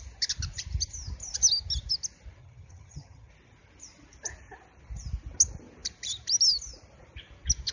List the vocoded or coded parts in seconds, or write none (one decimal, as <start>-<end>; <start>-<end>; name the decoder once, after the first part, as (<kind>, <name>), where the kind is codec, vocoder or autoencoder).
2.4-3.3 (vocoder, HiFi-GAN)